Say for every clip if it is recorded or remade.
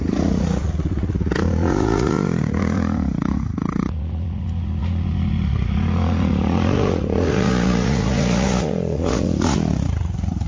remade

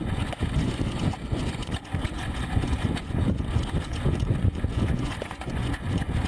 remade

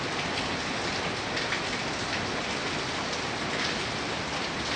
recorded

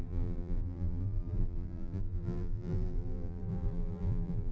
remade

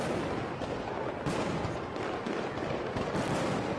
recorded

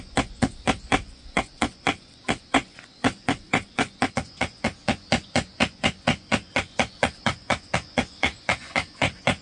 remade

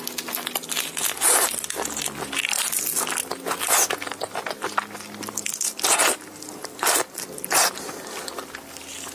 recorded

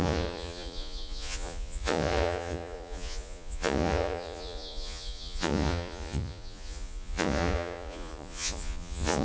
remade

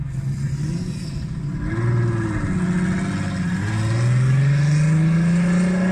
recorded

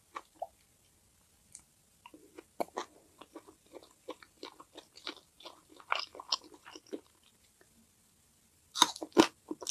recorded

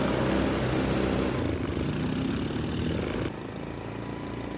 recorded